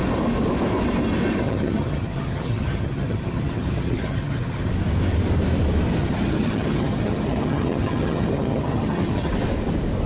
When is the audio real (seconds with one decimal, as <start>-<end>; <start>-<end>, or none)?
0.0-1.4; 4.7-6.0; 9.3-10.1

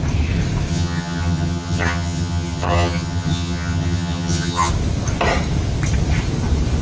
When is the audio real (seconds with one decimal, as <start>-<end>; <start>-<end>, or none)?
0.0-0.7; 4.7-6.8

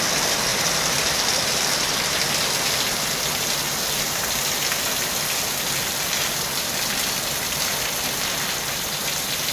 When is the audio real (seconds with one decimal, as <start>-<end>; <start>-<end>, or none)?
0.0-0.5; 1.4-9.5

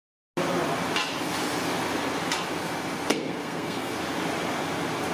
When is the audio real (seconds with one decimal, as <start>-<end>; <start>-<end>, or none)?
0.0-3.1; 3.9-5.1

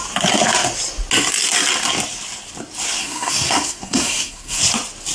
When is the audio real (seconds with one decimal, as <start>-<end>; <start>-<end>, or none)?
0.0-3.0; 4.6-5.1

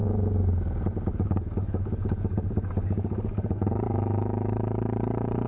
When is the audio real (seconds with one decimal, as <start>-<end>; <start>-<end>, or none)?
0.0-1.1